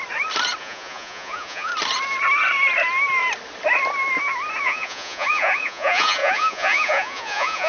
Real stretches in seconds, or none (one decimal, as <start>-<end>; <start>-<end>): 0.0-0.6; 1.7-4.6